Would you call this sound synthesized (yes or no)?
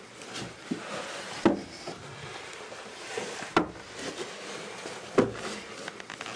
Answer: no